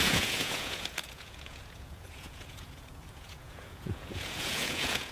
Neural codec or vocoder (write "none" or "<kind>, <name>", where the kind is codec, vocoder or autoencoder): vocoder, Vocos